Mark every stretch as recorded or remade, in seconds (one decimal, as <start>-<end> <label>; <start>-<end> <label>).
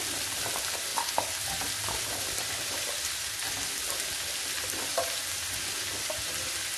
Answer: 0.0-6.8 recorded